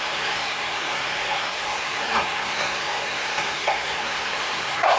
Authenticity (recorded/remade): remade